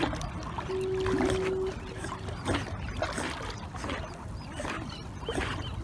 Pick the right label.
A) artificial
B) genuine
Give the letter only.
B